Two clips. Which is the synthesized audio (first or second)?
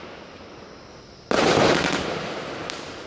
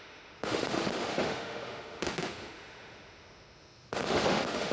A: second